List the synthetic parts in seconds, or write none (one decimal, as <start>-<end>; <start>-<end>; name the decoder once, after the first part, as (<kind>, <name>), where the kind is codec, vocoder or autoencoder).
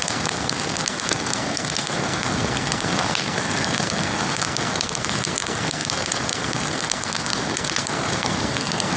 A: 0.0-9.0 (codec, SNAC)